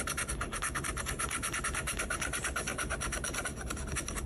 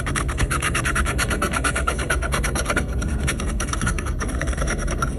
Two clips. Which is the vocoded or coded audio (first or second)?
second